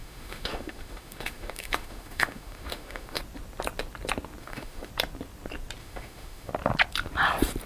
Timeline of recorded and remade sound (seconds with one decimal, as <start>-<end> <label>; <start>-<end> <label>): 0.0-3.2 remade; 3.2-4.4 recorded; 4.4-4.9 remade; 4.9-5.8 recorded; 5.8-6.5 remade; 6.5-7.7 recorded